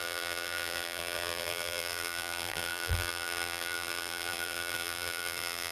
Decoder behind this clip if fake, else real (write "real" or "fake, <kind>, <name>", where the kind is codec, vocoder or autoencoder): fake, vocoder, BigVGAN v2